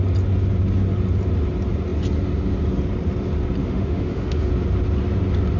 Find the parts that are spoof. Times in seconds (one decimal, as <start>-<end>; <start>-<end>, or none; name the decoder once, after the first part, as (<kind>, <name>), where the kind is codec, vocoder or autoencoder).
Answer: 3.6-4.5 (autoencoder, DAC-VAE)